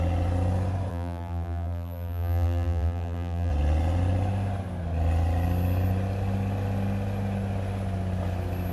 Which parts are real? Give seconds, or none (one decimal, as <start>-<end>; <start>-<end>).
0.0-0.9; 3.5-8.7